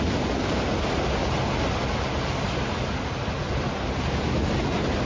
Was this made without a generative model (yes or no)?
yes